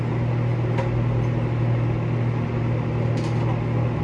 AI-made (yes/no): no